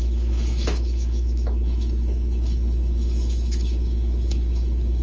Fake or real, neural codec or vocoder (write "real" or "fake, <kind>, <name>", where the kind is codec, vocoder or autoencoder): fake, autoencoder, DAC-VAE